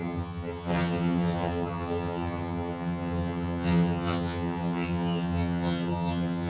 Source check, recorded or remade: remade